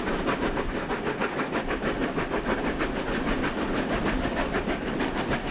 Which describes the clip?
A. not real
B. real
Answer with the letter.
B